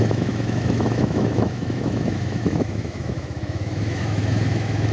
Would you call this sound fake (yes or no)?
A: yes